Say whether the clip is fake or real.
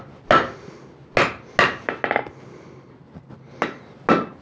real